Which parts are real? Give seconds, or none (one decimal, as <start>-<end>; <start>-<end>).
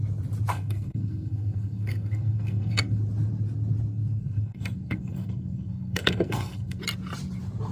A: 0.0-0.5; 3.0-3.9; 6.8-7.7